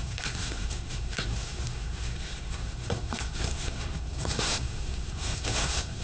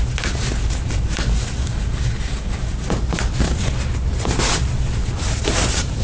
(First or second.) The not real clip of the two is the first